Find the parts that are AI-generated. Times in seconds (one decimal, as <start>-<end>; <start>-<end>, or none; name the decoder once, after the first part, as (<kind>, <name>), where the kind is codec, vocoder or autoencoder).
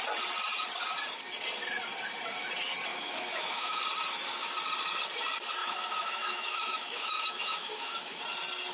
2.9-3.8 (autoencoder, DAC-VAE); 5.6-8.2